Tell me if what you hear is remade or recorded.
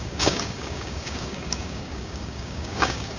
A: remade